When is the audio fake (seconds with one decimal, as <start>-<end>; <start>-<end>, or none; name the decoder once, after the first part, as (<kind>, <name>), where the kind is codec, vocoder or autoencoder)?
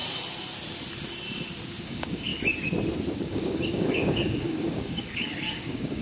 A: 1.8-2.3 (codec, DAC); 3.1-6.0